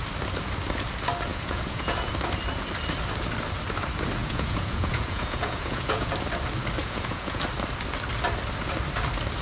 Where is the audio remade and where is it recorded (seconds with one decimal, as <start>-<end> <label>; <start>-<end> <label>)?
0.0-1.3 recorded; 1.3-2.1 remade; 2.1-4.2 recorded; 4.2-6.1 remade; 6.1-6.8 recorded; 6.8-7.4 remade; 7.4-9.4 recorded